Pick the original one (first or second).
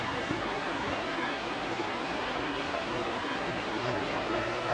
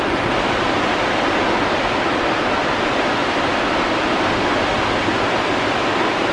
second